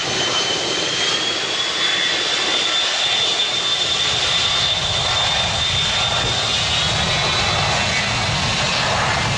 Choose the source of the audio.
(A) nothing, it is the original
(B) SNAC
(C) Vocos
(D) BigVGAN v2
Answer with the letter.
A